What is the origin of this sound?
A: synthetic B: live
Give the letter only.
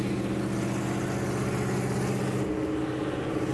B